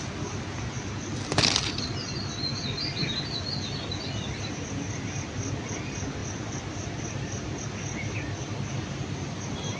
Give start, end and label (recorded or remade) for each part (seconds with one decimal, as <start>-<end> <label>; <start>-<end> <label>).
0.0-9.8 recorded